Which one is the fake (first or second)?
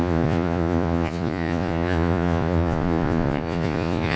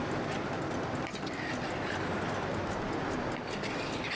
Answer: first